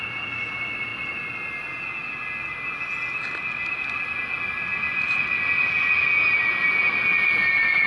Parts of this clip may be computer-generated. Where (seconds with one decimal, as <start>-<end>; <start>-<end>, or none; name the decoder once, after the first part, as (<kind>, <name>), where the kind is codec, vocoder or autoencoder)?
none